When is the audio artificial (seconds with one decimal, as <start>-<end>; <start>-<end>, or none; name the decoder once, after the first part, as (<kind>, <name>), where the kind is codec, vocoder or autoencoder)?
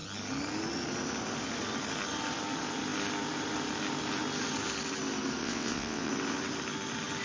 5.4-6.1 (vocoder, WaveNeXt)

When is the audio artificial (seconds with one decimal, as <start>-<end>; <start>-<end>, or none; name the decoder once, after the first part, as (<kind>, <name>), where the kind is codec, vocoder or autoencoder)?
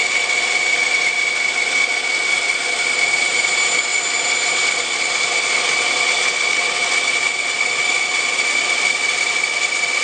none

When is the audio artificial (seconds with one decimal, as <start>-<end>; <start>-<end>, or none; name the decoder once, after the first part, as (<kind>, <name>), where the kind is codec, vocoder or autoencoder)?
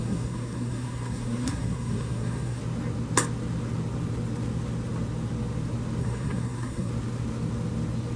0.0-2.6 (codec, SNAC); 6.0-6.9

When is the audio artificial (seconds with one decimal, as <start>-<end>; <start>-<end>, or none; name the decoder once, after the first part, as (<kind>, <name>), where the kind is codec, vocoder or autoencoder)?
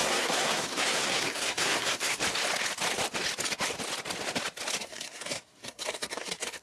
0.0-2.2 (codec, SNAC); 4.8-6.6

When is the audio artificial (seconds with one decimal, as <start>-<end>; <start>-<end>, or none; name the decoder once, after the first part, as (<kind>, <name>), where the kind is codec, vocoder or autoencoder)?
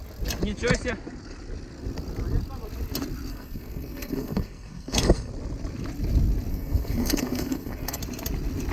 3.3-5.3 (codec, SNAC); 6.5-8.0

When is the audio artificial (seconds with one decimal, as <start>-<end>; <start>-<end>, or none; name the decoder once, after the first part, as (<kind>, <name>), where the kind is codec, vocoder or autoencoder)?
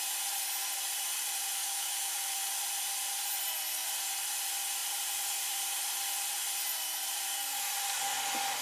1.6-2.4 (autoencoder, DAC-VAE)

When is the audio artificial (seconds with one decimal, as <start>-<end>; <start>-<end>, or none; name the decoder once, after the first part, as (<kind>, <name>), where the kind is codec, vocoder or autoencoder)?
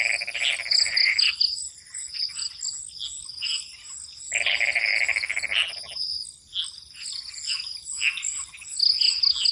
none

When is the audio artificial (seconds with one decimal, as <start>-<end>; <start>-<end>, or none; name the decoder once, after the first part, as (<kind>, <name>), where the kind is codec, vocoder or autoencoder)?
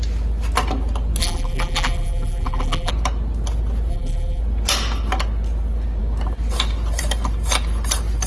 1.2-2.9 (vocoder, BigVGAN v2); 3.9-4.4